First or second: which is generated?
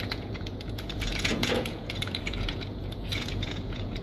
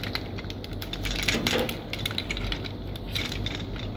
first